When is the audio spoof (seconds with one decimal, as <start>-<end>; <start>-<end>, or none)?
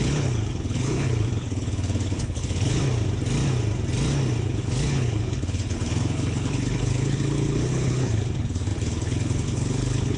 0.0-2.8; 4.4-10.2